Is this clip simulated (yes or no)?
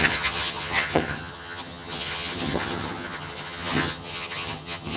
yes